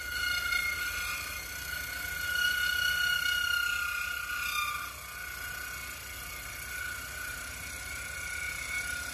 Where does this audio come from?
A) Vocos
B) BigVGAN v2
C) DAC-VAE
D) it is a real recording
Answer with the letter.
D